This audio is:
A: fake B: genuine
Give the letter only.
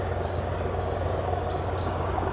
A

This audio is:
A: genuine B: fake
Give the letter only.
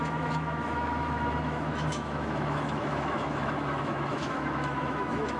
B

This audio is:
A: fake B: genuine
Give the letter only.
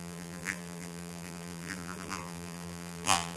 A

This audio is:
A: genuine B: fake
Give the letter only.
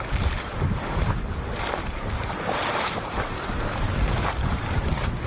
B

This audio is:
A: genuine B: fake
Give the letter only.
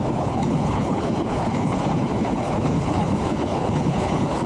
B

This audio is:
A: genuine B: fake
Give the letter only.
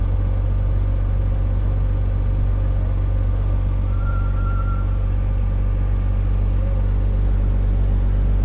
A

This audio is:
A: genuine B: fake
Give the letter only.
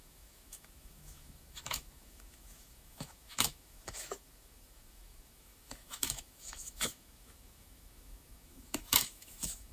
B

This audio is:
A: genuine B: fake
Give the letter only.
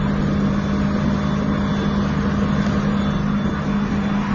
A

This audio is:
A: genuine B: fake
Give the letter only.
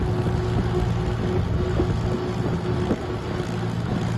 A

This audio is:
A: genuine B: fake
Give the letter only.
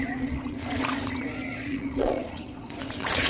B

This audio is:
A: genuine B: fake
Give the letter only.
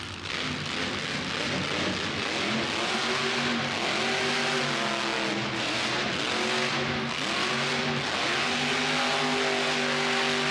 A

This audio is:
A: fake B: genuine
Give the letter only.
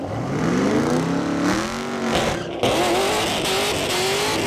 B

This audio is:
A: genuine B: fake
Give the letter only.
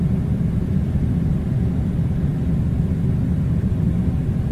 A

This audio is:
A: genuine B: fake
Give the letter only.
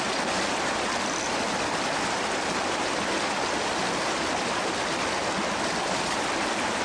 A